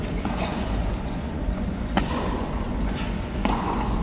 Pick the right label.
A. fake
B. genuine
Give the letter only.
A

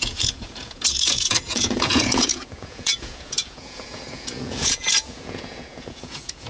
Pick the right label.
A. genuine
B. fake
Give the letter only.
B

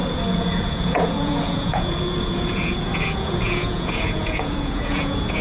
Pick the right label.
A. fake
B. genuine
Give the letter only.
A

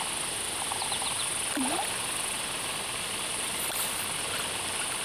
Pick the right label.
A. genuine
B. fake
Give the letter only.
A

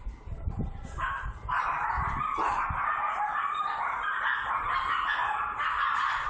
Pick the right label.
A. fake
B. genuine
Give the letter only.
B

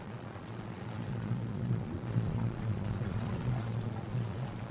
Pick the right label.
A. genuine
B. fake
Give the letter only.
B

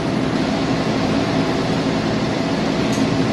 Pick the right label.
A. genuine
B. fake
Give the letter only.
A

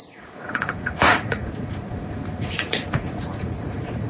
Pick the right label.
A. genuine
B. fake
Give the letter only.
B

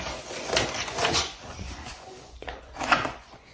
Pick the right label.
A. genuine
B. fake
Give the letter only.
B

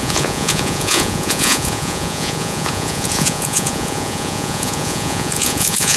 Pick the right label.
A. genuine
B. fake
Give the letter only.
B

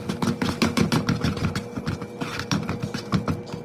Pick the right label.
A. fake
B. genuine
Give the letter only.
B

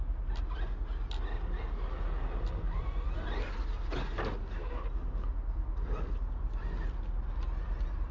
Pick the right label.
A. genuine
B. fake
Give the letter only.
A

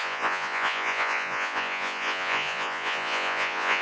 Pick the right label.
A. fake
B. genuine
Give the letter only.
A